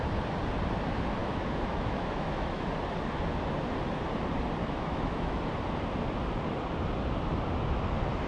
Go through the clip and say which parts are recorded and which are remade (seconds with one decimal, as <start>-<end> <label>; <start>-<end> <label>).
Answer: 0.0-1.2 recorded; 1.2-2.7 remade; 2.7-4.6 recorded; 4.6-5.4 remade; 5.4-8.3 recorded